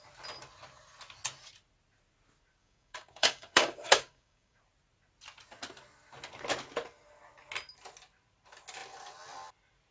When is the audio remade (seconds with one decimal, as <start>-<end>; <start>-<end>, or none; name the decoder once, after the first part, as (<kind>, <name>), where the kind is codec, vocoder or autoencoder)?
2.6-4.6 (codec, DAC)